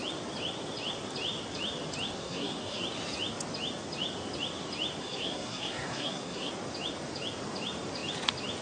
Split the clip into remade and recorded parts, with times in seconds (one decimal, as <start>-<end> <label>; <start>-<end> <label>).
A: 0.0-2.2 recorded; 2.2-2.8 remade; 2.8-5.0 recorded; 5.0-6.5 remade; 6.5-8.6 recorded